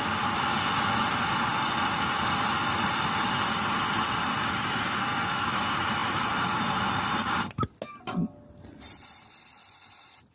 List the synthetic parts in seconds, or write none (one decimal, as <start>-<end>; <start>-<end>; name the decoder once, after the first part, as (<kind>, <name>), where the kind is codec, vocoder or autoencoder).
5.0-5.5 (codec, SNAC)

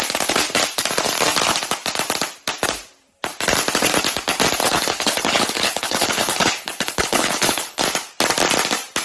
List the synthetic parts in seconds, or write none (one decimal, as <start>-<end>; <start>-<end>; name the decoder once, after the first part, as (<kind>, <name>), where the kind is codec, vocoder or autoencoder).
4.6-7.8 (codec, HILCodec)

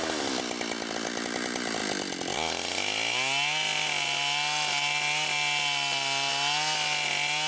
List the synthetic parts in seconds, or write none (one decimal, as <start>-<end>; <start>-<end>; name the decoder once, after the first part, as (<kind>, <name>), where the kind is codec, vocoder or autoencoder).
none

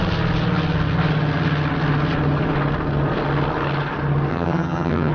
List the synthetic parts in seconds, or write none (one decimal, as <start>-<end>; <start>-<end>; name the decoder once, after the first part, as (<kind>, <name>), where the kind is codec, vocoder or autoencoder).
4.3-5.1 (vocoder, HiFi-GAN)